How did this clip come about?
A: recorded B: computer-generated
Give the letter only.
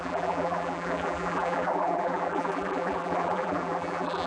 B